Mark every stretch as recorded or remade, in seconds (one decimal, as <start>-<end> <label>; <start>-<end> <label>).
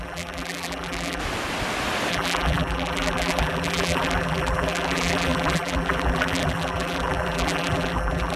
0.0-1.2 remade; 1.2-2.1 recorded; 2.1-8.4 remade